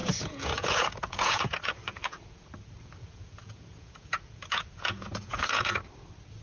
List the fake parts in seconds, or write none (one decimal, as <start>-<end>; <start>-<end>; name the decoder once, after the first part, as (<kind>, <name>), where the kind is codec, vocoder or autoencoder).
0.0-2.5 (vocoder, Vocos); 3.0-5.8